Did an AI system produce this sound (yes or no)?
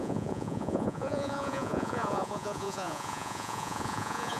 yes